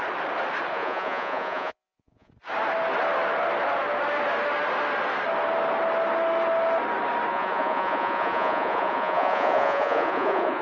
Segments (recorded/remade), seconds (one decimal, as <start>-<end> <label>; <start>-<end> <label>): 0.0-0.7 recorded; 0.7-2.3 remade; 2.3-7.3 recorded; 7.3-10.6 remade